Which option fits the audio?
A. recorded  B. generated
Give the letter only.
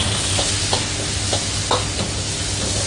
A